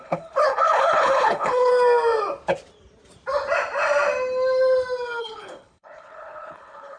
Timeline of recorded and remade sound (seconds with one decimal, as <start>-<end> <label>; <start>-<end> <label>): 0.0-1.7 remade; 1.7-5.2 recorded; 5.2-7.0 remade